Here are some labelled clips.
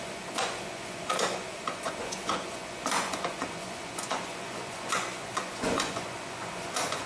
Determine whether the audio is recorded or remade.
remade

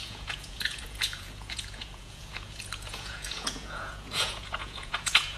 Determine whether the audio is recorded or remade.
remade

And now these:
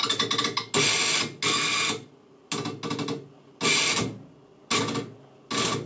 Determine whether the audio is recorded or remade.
recorded